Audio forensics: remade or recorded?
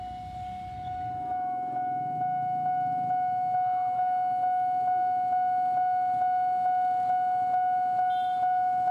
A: recorded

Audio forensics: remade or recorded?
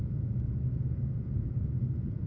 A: remade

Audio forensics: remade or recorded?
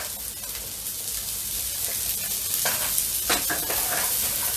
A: recorded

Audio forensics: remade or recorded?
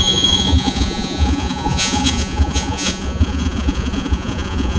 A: remade